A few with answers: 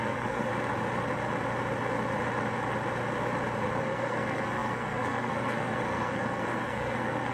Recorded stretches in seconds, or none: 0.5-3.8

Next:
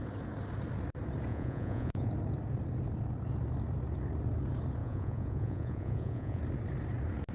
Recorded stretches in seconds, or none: 0.0-1.3; 2.1-4.8; 6.4-7.3

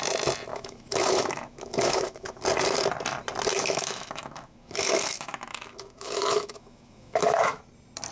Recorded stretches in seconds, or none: 0.0-0.5; 2.4-3.5; 7.6-8.1

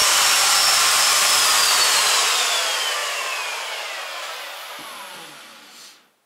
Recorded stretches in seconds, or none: 2.6-3.0; 3.9-6.3

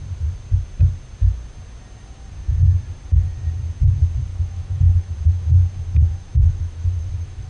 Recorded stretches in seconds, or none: 0.0-4.3; 5.0-6.3